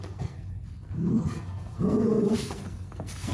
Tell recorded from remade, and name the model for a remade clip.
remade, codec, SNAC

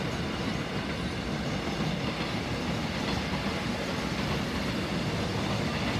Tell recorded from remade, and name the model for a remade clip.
recorded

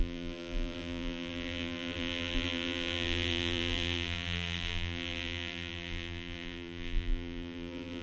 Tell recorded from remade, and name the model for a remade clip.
remade, vocoder, BigVGAN v2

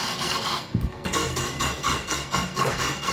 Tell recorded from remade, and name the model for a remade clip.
remade, codec, SNAC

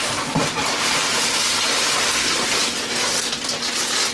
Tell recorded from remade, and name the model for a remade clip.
recorded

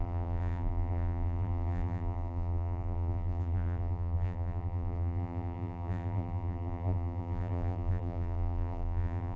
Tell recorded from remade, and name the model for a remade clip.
remade, vocoder, BigVGAN v2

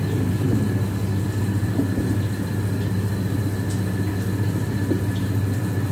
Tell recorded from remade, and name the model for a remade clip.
recorded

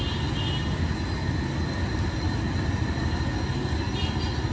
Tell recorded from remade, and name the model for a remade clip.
recorded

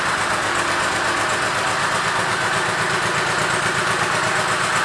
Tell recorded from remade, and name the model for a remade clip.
recorded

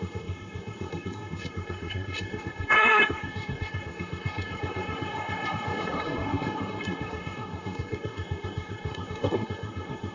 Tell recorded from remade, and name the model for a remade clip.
remade, codec, SNAC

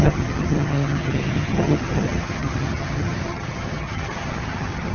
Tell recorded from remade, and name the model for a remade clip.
remade, vocoder, HiFi-GAN